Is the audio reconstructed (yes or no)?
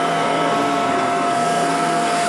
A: yes